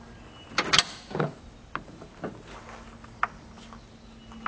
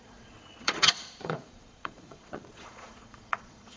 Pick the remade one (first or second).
second